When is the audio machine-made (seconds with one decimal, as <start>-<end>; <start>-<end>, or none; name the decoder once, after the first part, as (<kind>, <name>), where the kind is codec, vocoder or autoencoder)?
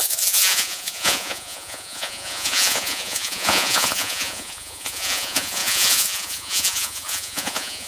0.0-7.9 (vocoder, Vocos)